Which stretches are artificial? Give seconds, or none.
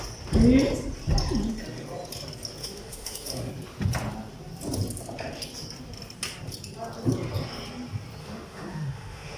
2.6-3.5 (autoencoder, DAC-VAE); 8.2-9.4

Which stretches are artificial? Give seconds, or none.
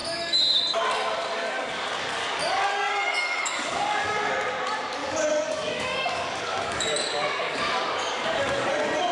0.0-0.6 (codec, DAC); 1.2-4.3; 5.0-8.7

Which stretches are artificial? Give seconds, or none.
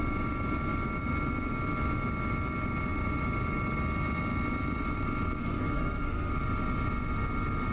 5.4-6.3 (codec, SNAC)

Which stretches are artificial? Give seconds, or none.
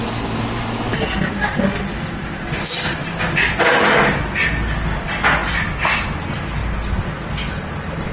none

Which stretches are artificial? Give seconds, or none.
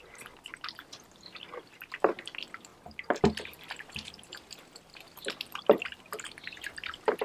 none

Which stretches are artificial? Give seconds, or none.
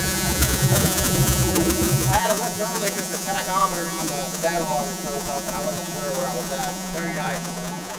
0.0-8.0 (vocoder, Vocos)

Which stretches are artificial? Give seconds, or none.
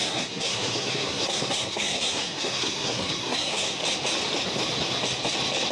0.0-3.8 (codec, SNAC)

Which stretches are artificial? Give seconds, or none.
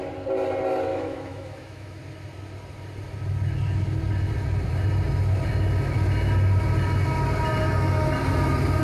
0.9-2.0 (autoencoder, DAC-VAE)